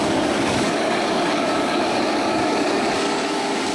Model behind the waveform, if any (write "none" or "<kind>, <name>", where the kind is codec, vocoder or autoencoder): codec, DAC